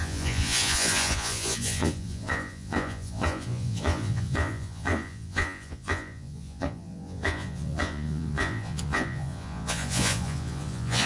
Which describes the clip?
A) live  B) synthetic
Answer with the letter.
B